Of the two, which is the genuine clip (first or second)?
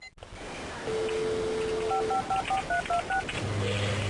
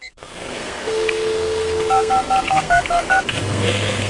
first